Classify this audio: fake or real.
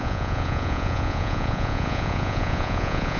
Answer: fake